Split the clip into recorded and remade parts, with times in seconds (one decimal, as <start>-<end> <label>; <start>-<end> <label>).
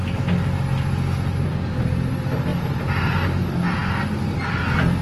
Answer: 0.0-5.0 recorded